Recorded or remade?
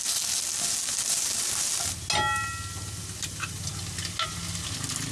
recorded